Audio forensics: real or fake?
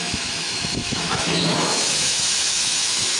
fake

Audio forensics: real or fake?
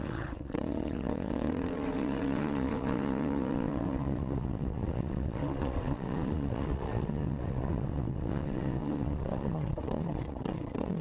fake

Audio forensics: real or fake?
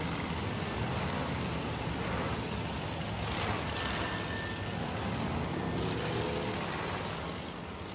real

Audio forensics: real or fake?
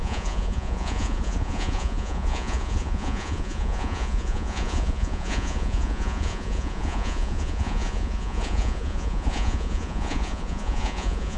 fake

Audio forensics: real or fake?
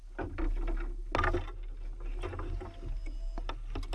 real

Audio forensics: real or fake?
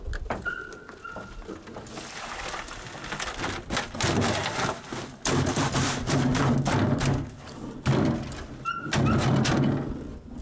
real